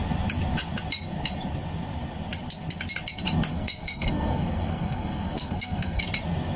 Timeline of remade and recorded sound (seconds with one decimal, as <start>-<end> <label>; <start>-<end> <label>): 0.0-3.5 recorded; 3.5-6.0 remade; 6.0-6.6 recorded